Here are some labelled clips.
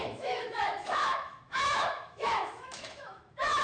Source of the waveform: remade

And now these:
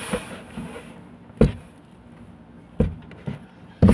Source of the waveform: recorded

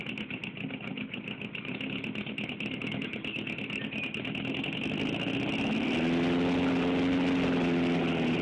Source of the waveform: recorded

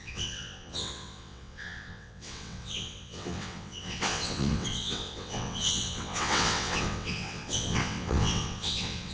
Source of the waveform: remade